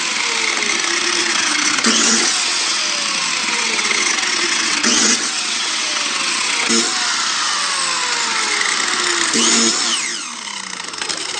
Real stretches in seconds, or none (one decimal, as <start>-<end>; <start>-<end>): 0.0-1.2; 2.8-3.4; 6.7-11.4